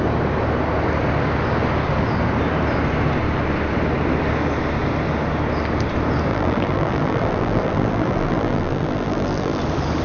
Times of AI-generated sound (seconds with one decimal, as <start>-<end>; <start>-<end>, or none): 6.3-9.6